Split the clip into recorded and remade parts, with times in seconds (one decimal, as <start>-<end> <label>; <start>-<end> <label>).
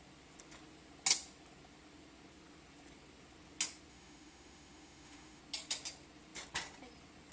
0.0-3.9 recorded; 3.9-5.4 remade; 5.4-7.3 recorded